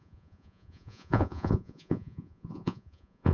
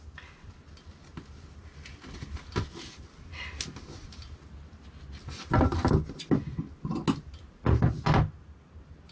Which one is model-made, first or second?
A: first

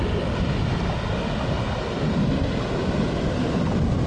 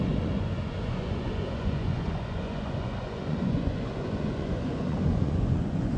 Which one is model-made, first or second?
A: second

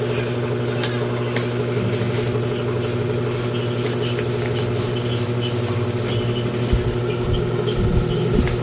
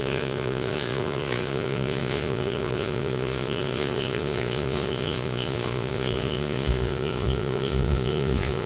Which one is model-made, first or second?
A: second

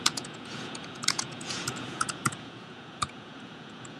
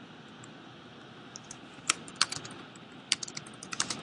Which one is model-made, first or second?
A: first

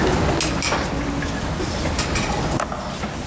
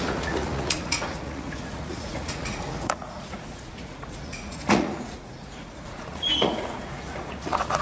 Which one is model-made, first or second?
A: second